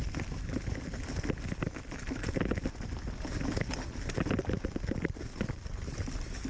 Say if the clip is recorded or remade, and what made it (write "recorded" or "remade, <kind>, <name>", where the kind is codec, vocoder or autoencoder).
recorded